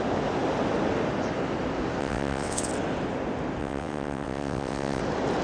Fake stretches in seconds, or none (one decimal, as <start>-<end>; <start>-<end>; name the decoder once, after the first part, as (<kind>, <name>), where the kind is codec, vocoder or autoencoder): 2.0-2.7 (vocoder, WaveNeXt); 3.6-5.0